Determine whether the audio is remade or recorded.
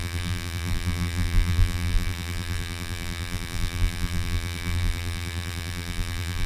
remade